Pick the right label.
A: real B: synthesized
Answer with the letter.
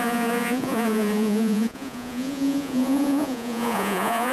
B